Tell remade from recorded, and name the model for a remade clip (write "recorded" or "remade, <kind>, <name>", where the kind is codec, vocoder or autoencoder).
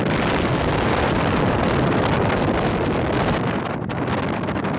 recorded